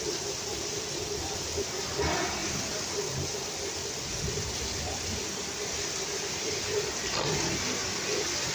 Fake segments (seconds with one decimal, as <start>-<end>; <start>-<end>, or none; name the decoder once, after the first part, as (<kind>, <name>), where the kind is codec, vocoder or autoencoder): 0.5-1.5 (vocoder, BigVGAN v2); 2.4-3.4; 4.1-7.3